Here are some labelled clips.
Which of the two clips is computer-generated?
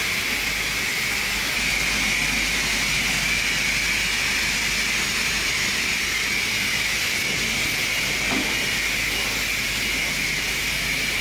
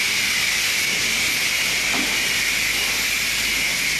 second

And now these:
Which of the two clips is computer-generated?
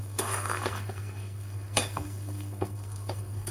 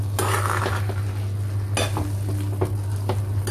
first